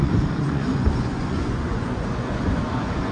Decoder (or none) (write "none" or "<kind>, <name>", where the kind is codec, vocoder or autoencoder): vocoder, Vocos